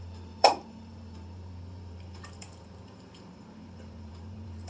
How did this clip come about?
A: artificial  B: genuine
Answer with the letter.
A